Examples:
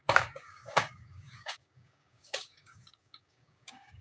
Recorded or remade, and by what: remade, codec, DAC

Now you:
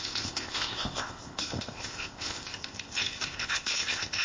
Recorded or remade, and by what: remade, codec, ZipCodec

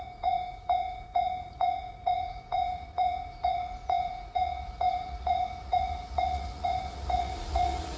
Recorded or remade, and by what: remade, vocoder, Vocos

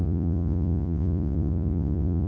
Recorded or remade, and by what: remade, vocoder, Vocos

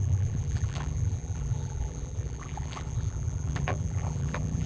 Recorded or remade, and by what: remade, vocoder, BigVGAN v2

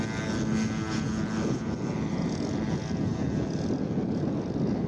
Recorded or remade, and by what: recorded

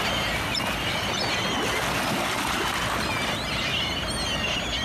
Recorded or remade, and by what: recorded